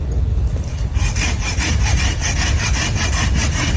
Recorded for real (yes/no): yes